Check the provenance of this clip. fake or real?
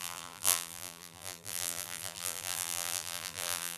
fake